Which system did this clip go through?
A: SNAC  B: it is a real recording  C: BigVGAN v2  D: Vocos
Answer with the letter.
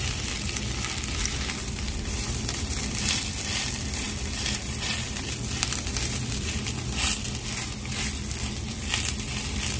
C